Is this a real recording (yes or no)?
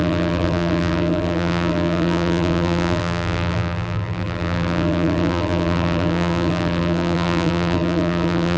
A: no